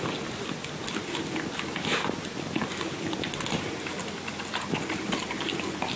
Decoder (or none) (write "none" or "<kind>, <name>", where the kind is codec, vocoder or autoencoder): none